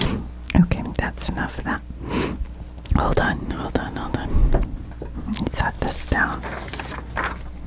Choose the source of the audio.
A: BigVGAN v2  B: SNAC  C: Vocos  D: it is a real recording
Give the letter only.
D